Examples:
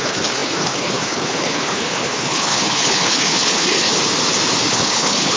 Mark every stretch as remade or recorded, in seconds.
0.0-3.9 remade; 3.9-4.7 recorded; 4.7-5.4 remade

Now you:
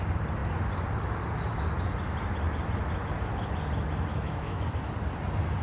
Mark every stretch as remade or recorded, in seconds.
0.0-4.1 recorded; 4.1-4.9 remade; 4.9-5.6 recorded

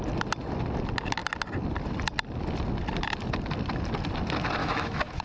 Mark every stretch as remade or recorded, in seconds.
0.0-4.6 recorded; 4.6-5.2 remade

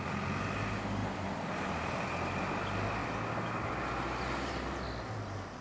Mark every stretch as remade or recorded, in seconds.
0.0-5.6 recorded

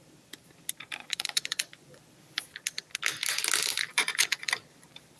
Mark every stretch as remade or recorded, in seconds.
0.0-1.0 recorded; 1.0-2.0 remade; 2.0-3.9 recorded; 3.9-4.5 remade; 4.5-5.2 recorded